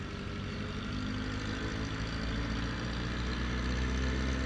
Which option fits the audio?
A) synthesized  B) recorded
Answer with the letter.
B